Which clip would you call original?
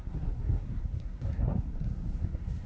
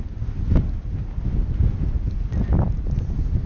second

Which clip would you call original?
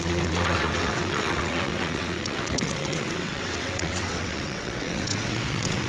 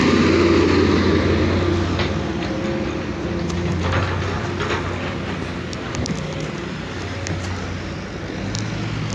second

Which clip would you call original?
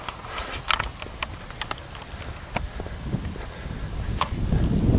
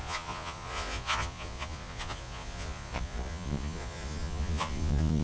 first